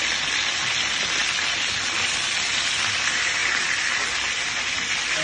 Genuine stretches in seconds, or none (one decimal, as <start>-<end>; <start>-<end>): 0.0-5.2